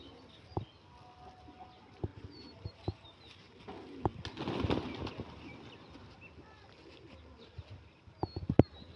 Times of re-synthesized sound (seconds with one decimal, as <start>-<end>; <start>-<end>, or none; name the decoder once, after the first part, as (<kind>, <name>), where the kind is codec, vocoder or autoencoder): 2.1-3.6 (vocoder, BigVGAN v2)